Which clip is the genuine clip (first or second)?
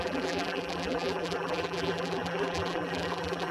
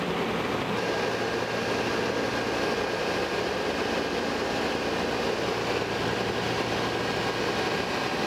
second